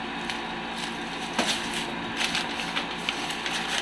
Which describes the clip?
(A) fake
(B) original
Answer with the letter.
B